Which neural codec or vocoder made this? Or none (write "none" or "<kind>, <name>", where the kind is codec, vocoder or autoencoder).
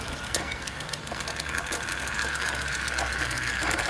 codec, SNAC